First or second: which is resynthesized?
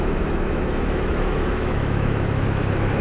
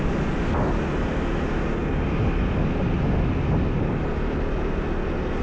first